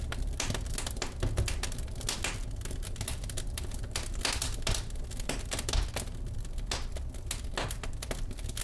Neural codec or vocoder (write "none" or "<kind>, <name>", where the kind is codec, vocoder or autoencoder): none